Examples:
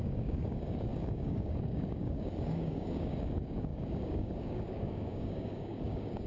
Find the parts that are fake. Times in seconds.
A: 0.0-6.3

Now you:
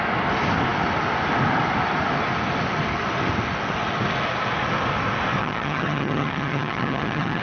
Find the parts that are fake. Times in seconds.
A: 5.4-7.4

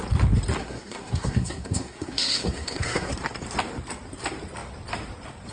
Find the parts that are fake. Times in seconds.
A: 0.6-3.1

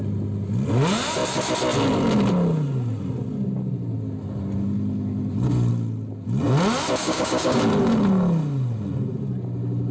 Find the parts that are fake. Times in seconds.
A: 7.0-7.6

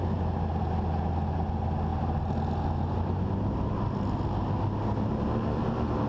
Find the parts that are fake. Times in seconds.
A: none

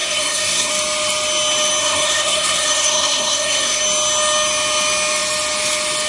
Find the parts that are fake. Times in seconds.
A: 0.0-0.7; 1.8-3.8

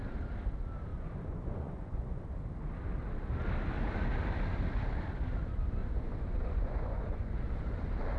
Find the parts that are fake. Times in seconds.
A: 0.9-2.3; 5.8-7.4

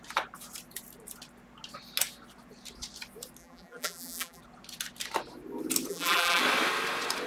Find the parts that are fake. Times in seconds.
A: 3.4-4.4; 5.9-6.4